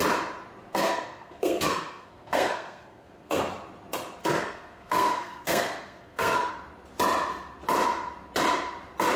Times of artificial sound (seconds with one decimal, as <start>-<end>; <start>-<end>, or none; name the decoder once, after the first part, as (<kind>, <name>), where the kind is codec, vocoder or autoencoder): 0.7-3.4 (codec, SNAC); 4.2-6.5